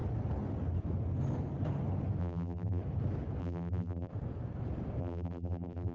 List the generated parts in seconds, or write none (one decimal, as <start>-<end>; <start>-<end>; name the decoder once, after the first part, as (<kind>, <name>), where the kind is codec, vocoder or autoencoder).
2.2-2.8 (vocoder, BigVGAN v2); 3.4-4.1; 5.0-5.9